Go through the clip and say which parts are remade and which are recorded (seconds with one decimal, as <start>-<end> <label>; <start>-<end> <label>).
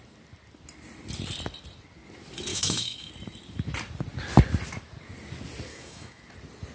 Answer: 0.0-2.5 recorded; 2.5-3.1 remade; 3.1-5.7 recorded; 5.7-6.2 remade; 6.2-6.7 recorded